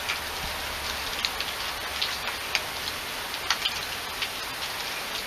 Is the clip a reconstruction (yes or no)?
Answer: no